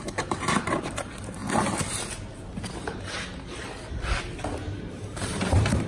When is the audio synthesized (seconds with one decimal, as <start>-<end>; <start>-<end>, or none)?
0.0-1.4; 4.9-5.9